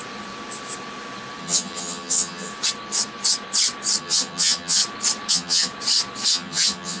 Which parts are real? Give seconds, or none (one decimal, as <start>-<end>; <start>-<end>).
0.0-1.4; 2.5-4.0; 4.8-5.3; 5.7-6.3